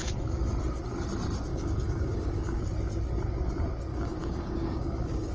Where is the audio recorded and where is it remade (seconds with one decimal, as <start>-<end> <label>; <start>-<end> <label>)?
0.0-1.5 recorded; 1.5-2.6 remade; 2.6-3.9 recorded; 3.9-5.3 remade